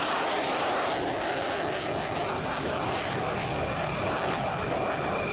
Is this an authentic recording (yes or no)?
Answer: yes